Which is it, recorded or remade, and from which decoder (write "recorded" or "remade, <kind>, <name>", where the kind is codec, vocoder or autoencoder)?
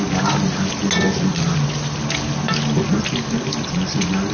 recorded